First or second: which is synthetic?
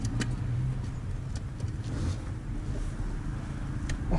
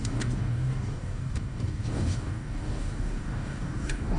second